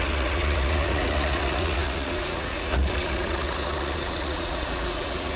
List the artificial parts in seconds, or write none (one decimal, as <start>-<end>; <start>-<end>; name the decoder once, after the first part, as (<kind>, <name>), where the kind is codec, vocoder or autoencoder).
0.0-5.4 (vocoder, Vocos)

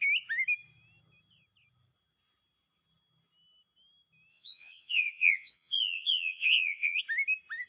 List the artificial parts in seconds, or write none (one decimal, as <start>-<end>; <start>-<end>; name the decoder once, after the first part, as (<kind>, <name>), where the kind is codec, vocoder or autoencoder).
4.3-7.0 (vocoder, Vocos)